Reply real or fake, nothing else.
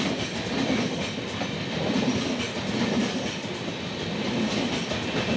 real